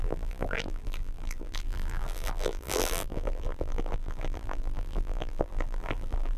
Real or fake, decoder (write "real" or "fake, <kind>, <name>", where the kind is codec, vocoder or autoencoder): fake, vocoder, BigVGAN v2